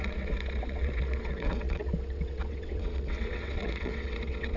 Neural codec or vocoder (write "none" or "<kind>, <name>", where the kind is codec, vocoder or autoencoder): vocoder, WaveNeXt